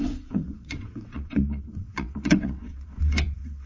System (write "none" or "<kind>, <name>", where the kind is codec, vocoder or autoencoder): vocoder, WaveNeXt